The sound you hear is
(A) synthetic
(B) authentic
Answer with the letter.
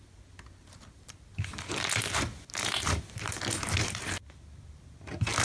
B